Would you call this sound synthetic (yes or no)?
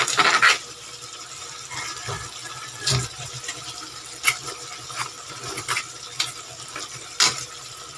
no